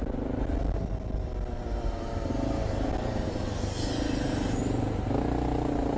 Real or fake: real